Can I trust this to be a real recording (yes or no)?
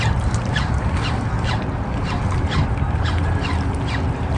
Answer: yes